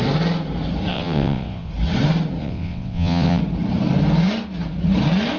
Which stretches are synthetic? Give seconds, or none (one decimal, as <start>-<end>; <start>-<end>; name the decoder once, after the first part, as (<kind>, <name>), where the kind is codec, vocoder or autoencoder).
0.9-1.7 (vocoder, WaveNeXt); 2.4-3.4